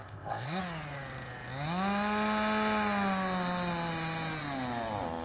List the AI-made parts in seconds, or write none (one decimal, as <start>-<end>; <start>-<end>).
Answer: 0.0-0.6